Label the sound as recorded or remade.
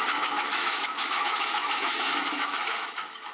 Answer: remade